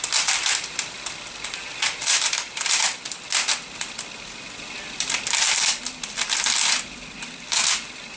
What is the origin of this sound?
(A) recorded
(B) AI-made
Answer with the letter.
A